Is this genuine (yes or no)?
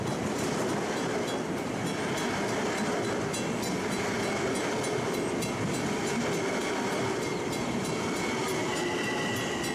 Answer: yes